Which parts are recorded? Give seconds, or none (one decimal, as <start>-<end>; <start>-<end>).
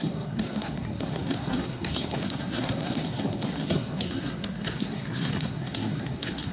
none